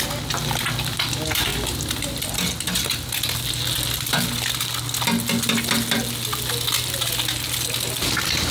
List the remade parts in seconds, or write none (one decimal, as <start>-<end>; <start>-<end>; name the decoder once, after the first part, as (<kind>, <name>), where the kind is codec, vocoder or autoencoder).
none